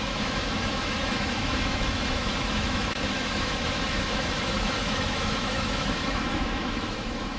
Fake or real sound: fake